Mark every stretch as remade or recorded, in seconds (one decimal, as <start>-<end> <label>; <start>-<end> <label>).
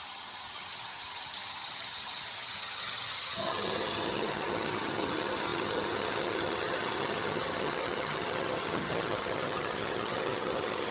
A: 0.0-10.9 remade